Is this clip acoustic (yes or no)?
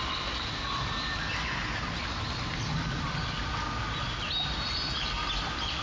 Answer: yes